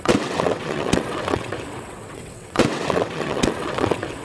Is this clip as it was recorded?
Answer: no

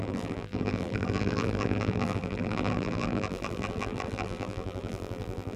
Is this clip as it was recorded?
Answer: no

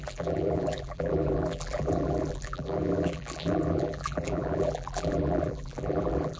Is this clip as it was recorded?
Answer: no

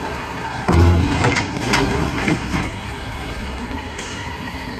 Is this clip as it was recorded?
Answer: no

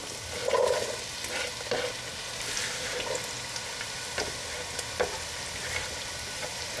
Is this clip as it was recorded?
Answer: yes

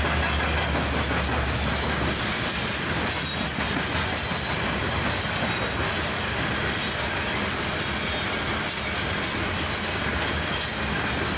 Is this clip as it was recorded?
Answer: yes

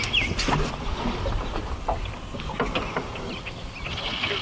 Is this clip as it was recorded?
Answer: yes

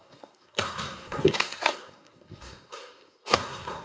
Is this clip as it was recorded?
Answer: no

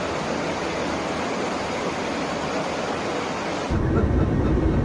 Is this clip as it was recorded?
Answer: yes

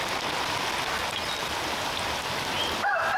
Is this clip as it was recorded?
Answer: yes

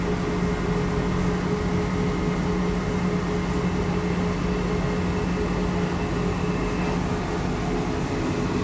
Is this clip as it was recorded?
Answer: yes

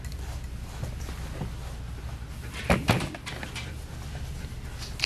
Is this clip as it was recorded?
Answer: yes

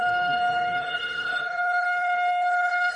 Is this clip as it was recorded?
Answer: no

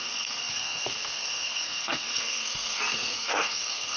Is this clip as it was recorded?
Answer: no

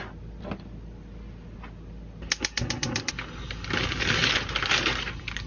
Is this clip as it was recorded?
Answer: yes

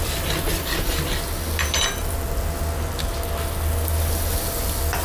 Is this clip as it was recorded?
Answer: yes